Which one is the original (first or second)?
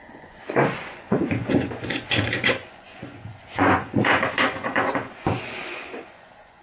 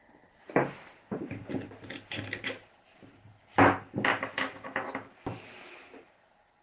second